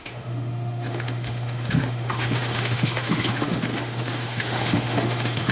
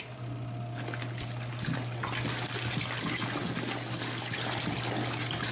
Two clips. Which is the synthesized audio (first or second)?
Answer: first